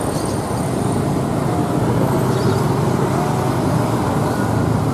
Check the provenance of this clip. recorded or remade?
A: recorded